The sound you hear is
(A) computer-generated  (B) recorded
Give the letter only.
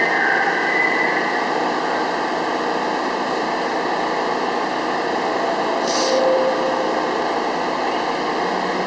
B